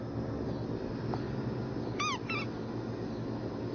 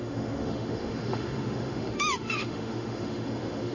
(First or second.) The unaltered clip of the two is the first